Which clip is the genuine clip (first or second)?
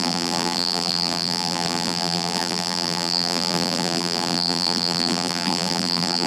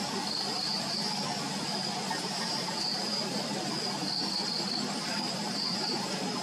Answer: second